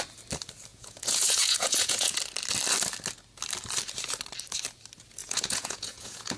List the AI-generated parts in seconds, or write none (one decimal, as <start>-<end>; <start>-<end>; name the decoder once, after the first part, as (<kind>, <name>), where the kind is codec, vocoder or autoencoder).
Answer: 0.7-2.2 (vocoder, Vocos); 5.2-6.4